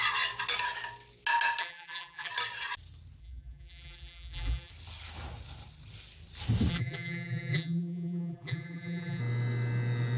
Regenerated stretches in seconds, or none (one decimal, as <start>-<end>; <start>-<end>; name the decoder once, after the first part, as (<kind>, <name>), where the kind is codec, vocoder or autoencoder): 1.6-2.3 (vocoder, BigVGAN v2); 3.2-4.7; 6.7-9.2